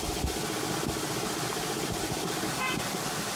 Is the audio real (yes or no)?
yes